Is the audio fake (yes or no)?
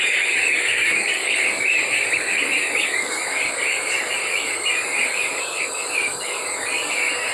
yes